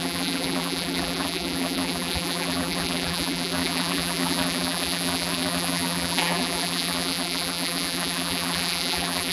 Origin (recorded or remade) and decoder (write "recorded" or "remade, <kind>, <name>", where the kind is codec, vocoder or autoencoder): remade, vocoder, BigVGAN v2